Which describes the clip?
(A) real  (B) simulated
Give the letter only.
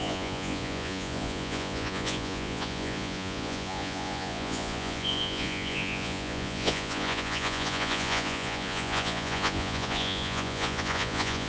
B